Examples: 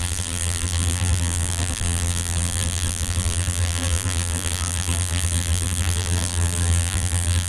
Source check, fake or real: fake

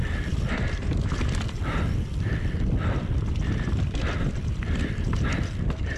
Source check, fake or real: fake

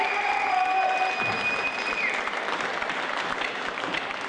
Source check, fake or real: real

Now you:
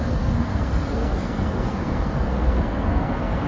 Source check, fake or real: fake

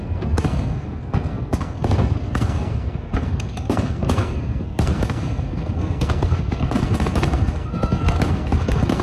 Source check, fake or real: fake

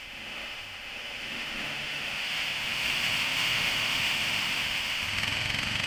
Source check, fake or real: fake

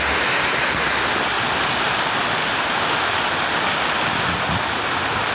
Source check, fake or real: real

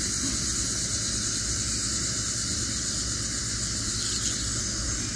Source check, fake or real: real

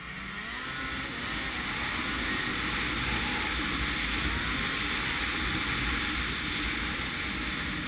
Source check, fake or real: real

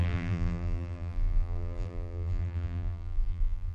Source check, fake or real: fake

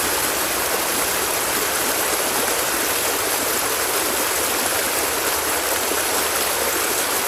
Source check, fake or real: fake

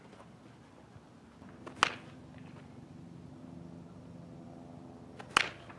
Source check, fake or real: real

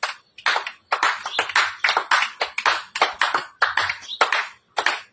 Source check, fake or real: real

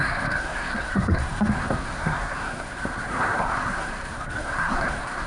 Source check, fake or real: fake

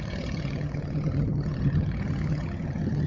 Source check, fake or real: fake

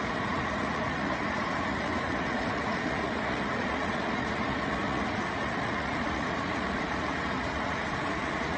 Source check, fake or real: fake